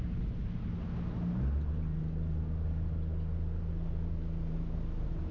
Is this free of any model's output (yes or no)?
yes